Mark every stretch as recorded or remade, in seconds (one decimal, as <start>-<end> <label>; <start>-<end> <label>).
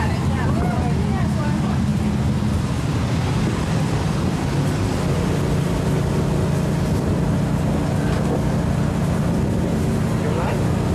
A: 0.0-10.9 recorded